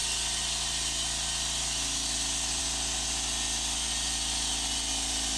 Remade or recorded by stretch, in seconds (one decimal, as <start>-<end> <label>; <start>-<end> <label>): 0.0-5.4 recorded